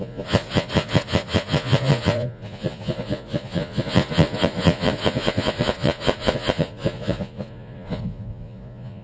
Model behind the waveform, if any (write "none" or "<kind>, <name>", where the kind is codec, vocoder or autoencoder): vocoder, Vocos